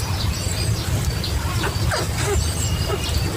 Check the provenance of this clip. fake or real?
real